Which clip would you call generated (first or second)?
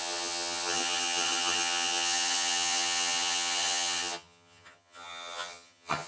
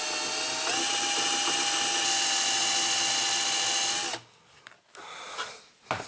first